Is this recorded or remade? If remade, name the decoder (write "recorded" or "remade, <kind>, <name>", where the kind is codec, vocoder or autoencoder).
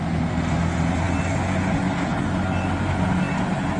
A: recorded